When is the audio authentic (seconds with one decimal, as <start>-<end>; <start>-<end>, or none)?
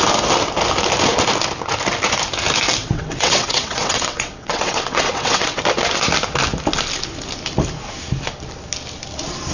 0.0-2.8; 5.6-9.5